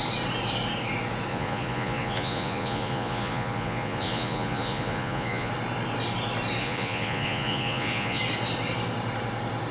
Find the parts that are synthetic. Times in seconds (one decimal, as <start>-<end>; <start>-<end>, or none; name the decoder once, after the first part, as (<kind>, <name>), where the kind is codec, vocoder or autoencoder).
1.3-5.5 (vocoder, Vocos); 6.6-8.2